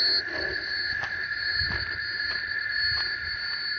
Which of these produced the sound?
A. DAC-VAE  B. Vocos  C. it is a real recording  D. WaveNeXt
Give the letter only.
C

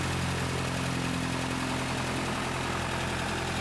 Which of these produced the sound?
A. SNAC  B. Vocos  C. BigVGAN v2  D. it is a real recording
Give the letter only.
D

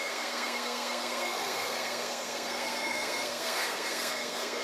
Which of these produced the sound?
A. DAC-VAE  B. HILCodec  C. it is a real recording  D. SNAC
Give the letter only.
D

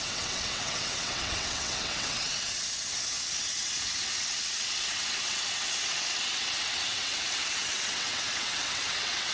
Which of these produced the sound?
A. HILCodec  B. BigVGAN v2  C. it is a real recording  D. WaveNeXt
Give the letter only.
D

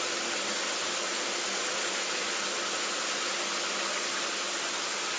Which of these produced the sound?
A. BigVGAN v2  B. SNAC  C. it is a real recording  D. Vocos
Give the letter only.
C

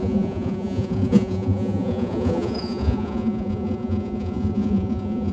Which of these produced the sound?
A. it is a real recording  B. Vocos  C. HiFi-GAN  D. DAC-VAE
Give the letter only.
B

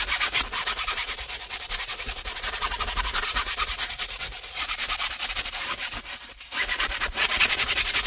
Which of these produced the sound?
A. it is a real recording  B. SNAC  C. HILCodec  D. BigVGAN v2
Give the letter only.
D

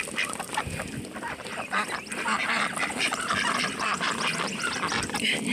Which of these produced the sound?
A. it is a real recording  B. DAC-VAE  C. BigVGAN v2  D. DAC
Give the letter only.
C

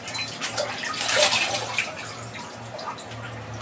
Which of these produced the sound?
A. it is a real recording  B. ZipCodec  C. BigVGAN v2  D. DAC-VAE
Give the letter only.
A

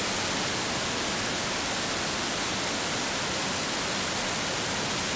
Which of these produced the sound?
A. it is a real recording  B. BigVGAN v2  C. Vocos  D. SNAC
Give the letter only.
A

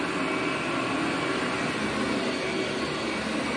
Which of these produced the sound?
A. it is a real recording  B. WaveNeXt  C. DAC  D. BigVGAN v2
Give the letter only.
A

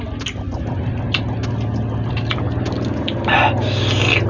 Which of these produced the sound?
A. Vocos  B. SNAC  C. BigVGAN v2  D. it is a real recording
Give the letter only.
D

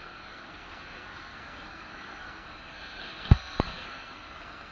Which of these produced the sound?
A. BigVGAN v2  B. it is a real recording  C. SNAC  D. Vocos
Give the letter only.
C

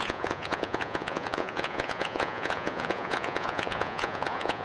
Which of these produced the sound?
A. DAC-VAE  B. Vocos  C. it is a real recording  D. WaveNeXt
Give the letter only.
B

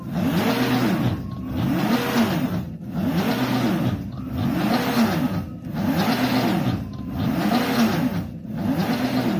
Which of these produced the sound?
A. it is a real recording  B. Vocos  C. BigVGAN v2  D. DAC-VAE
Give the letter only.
A